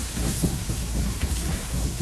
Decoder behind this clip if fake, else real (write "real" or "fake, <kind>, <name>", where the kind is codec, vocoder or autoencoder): fake, codec, SNAC